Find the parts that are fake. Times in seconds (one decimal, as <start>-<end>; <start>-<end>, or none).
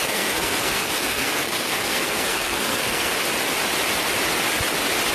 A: 0.0-3.1